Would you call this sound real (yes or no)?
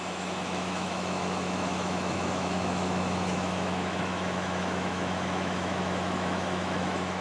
no